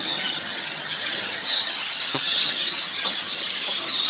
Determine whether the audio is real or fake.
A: fake